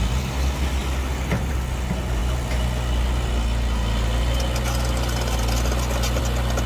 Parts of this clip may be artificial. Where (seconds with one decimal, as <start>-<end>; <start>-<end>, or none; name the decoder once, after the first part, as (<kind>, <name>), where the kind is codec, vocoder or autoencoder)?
none